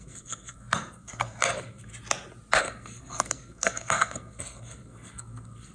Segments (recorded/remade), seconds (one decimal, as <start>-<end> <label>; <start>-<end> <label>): 0.0-1.9 remade; 1.9-2.6 recorded; 2.6-5.7 remade